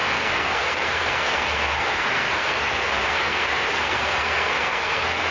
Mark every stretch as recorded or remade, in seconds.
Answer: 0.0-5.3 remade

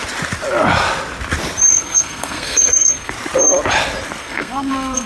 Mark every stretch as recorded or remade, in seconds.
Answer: 0.0-1.7 recorded; 1.7-3.1 remade; 3.1-4.2 recorded; 4.2-5.1 remade